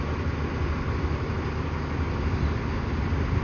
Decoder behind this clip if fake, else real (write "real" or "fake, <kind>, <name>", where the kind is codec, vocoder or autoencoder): real